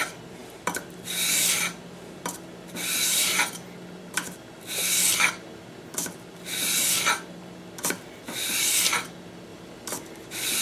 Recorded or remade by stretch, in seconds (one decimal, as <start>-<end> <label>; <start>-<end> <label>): 0.0-9.5 recorded; 9.5-10.6 remade